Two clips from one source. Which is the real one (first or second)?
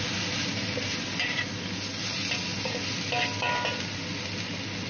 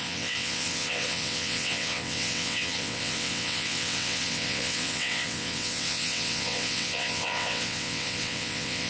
first